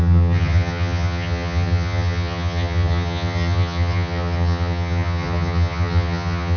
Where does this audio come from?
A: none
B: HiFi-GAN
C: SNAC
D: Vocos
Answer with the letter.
B